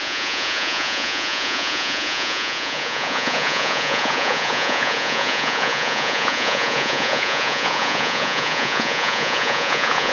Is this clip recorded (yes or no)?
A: no